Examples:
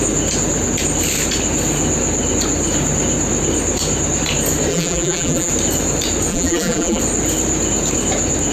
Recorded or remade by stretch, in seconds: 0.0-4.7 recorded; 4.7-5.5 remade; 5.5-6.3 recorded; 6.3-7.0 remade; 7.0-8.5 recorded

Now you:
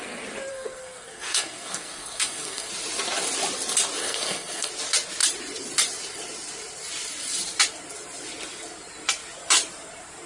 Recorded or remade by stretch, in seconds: 0.0-0.5 recorded; 0.5-2.7 remade; 2.7-4.0 recorded; 4.0-4.7 remade; 4.7-10.3 recorded